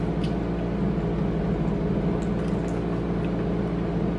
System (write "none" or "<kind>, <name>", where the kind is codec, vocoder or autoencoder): none